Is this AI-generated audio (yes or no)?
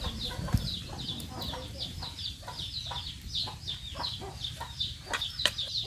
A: no